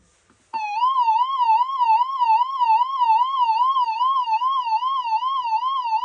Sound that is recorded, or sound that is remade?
recorded